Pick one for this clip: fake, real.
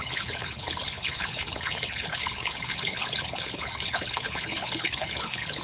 fake